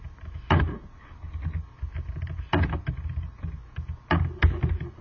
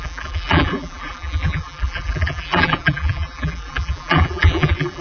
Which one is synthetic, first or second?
second